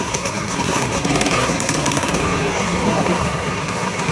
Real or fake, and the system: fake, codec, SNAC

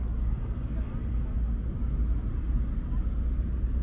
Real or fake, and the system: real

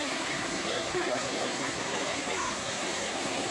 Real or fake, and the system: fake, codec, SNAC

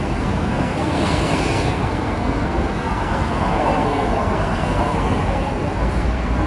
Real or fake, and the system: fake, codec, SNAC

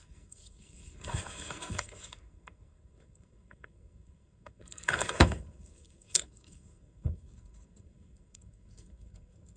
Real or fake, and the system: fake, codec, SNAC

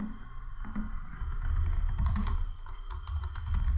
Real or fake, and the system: real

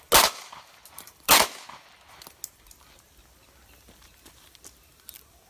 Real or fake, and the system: real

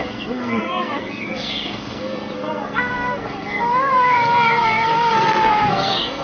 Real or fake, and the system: fake, codec, SNAC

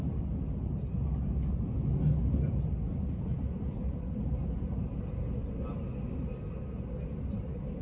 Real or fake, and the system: real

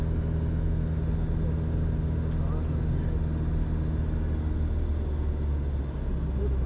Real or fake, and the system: real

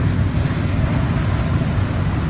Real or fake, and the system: real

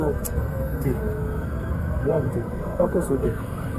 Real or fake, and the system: fake, codec, SNAC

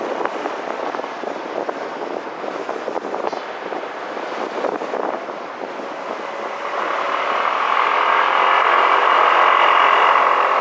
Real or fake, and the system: real